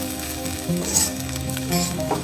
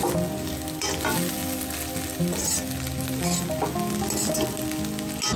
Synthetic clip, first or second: first